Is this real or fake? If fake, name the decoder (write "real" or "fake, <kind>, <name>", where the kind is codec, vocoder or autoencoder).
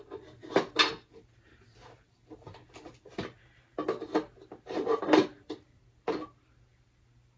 real